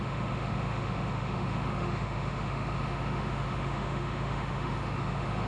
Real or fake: fake